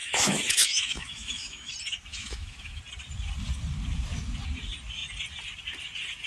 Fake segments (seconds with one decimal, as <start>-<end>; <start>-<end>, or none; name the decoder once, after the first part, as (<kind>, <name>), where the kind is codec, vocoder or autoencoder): 0.0-1.7 (autoencoder, DAC-VAE); 2.1-2.8